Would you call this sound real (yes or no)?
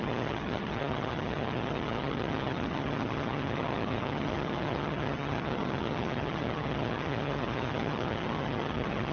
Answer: no